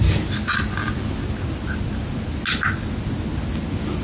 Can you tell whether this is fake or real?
real